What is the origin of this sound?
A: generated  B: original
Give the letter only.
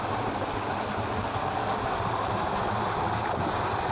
B